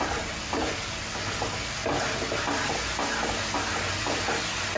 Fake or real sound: real